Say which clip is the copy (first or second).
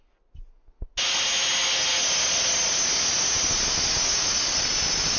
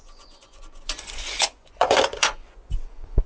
second